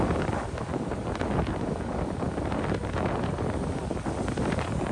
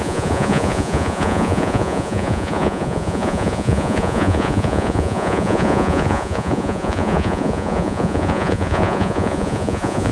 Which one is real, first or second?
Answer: first